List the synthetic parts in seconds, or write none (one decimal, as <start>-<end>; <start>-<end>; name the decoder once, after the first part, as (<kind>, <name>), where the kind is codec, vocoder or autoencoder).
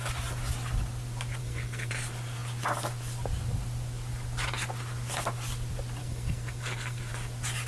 1.4-1.9 (codec, SNAC); 6.0-7.1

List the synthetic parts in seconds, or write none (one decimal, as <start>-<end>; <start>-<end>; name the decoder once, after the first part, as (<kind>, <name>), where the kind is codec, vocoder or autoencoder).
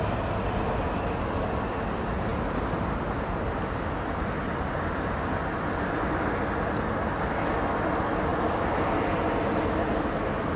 none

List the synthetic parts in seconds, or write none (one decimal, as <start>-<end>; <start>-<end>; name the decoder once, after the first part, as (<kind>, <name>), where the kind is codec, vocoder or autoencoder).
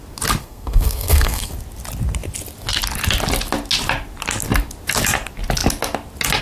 0.4-1.5 (codec, SNAC)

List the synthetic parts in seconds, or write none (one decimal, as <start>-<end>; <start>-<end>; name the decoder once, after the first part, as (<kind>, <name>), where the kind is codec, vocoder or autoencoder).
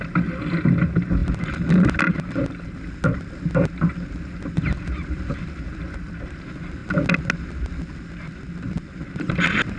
none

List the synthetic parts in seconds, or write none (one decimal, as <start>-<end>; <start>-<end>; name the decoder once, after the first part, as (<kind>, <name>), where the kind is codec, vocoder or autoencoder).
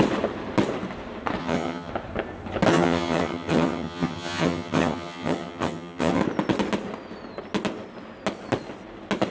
1.4-1.9 (vocoder, HiFi-GAN); 2.7-6.2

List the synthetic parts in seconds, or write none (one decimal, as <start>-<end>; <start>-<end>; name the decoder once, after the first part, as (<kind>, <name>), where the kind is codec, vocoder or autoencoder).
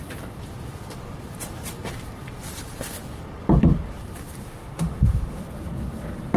4.4-5.4 (autoencoder, DAC-VAE)